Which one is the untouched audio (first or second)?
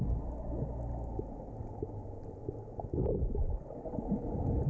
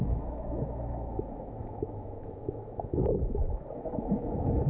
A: first